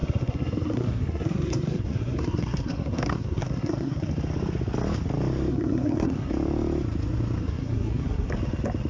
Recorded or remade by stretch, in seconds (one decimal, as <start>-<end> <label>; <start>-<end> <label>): 0.0-4.1 remade; 4.1-5.5 recorded; 5.5-6.3 remade; 6.3-7.4 recorded; 7.4-8.3 remade; 8.3-8.9 recorded